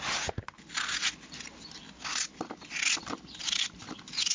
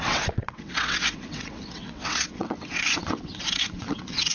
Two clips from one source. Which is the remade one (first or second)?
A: second